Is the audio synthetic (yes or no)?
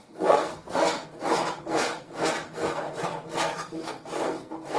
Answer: yes